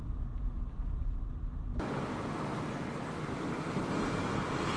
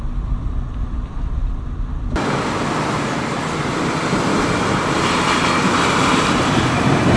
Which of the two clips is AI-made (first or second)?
second